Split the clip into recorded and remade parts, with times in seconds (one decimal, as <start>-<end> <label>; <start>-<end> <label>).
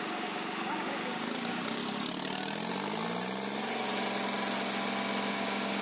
0.0-1.8 remade; 1.8-5.3 recorded; 5.3-5.8 remade